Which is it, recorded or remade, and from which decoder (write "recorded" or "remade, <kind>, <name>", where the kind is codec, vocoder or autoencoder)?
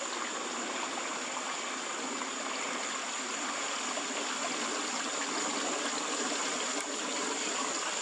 recorded